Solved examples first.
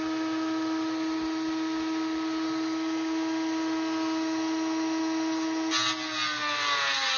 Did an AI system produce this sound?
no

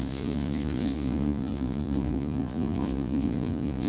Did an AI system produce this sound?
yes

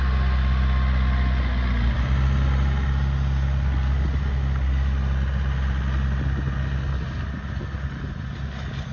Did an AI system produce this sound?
no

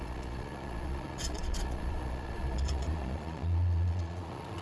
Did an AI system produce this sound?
yes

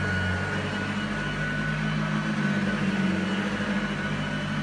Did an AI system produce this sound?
no